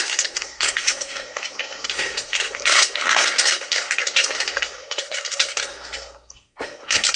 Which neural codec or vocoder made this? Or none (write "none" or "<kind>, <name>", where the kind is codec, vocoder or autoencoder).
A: codec, SNAC